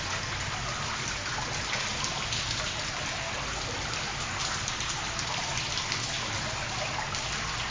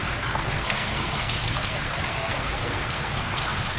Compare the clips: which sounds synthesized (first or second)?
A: second